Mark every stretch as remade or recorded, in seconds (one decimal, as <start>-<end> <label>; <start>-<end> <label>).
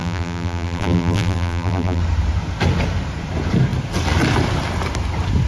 0.0-2.0 remade; 2.0-5.5 recorded